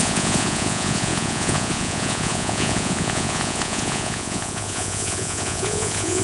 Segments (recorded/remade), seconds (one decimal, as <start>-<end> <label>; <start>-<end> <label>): 0.0-6.2 remade